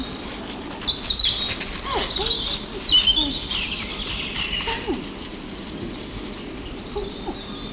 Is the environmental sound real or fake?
real